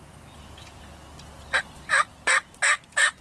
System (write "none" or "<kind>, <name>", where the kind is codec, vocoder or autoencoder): none